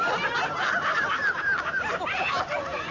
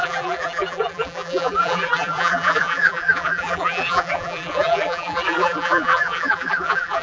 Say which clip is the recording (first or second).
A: first